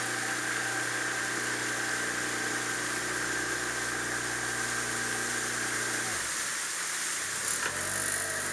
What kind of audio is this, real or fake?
real